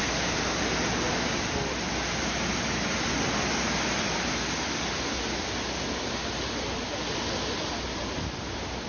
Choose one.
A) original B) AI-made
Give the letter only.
A